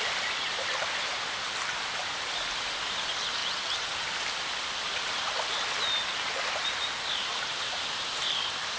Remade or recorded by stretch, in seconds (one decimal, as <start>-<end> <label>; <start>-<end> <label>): 0.0-8.8 recorded